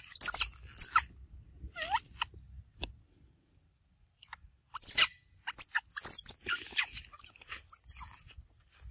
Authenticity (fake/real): real